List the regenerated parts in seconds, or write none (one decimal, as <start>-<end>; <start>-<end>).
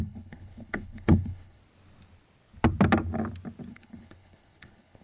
0.0-1.6; 3.7-5.0